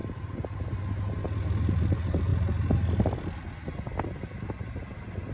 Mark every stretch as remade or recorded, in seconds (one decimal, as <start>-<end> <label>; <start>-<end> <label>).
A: 0.0-5.3 recorded